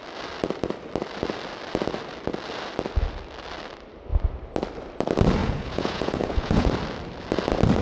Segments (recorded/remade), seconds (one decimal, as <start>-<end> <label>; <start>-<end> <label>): 0.0-5.4 recorded; 5.4-6.7 remade; 6.7-7.8 recorded